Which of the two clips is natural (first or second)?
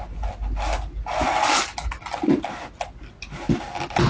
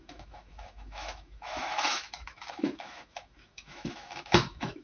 first